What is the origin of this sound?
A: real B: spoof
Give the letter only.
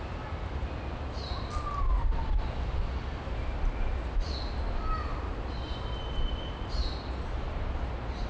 A